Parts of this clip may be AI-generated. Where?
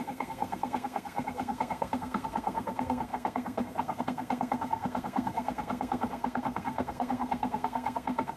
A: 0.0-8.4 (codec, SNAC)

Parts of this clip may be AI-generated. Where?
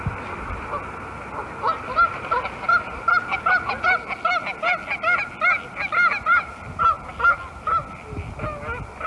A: none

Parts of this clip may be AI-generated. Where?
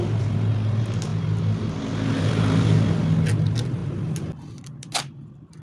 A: none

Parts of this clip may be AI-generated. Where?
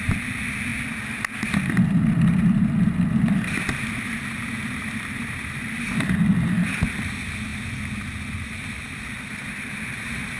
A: none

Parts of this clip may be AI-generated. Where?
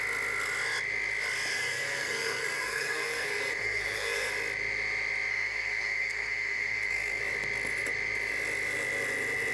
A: 1.5-4.3 (codec, SNAC); 5.3-7.2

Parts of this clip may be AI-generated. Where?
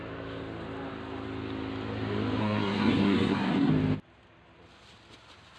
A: 2.4-3.7 (codec, SNAC)